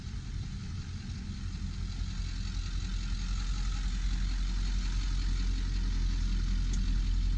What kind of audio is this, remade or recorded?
recorded